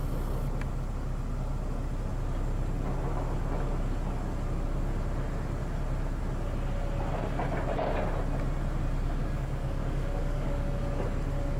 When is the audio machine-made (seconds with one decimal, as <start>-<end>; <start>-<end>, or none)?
9.2-10.8